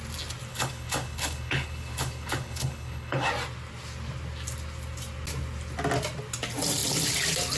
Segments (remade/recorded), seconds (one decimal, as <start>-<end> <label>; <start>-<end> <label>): 0.0-0.5 recorded; 0.5-3.3 remade; 3.3-7.6 recorded

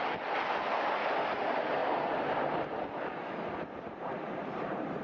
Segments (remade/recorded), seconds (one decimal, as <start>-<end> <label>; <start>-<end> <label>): 0.0-5.0 recorded

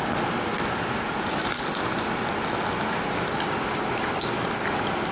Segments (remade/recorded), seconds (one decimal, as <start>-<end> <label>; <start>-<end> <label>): 0.0-5.1 recorded

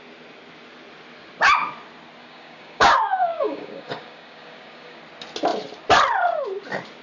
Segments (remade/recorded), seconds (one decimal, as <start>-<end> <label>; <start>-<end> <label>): 0.0-2.2 recorded; 2.2-5.0 remade; 5.0-7.0 recorded

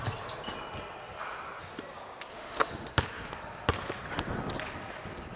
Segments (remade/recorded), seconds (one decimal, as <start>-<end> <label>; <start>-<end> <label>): 0.0-2.3 recorded; 2.3-2.9 remade; 2.9-5.4 recorded

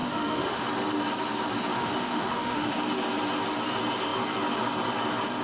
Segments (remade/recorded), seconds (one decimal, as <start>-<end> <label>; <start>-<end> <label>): 0.0-0.6 remade; 0.6-1.7 recorded; 1.7-2.7 remade; 2.7-5.4 recorded